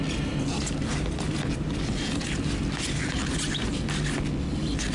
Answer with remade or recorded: recorded